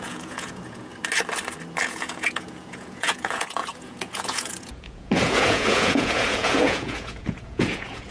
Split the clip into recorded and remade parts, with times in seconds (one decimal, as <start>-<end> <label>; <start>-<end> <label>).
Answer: 0.0-0.9 remade; 0.9-1.8 recorded; 1.8-8.1 remade